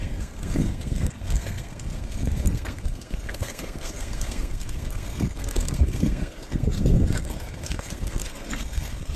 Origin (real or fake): fake